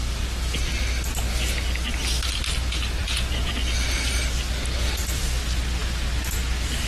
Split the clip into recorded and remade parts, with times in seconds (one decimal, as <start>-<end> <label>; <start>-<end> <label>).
0.0-3.0 recorded; 3.0-3.5 remade; 3.5-6.9 recorded